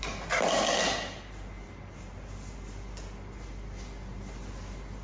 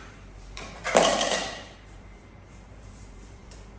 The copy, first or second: second